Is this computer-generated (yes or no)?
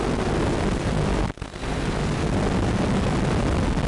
no